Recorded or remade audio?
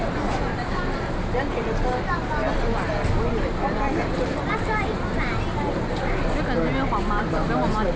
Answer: recorded